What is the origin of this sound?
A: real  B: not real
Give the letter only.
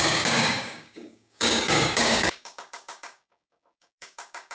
B